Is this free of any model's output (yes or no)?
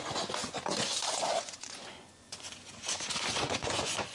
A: no